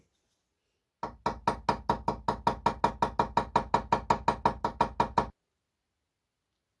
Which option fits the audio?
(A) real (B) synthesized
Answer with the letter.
A